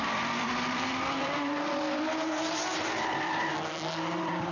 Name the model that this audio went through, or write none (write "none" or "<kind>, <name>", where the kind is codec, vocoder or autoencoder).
vocoder, BigVGAN v2